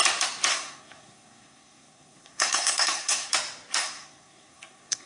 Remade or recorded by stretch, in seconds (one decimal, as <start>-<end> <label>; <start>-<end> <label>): 0.0-0.5 recorded; 0.5-3.3 remade; 3.3-3.8 recorded; 3.8-5.1 remade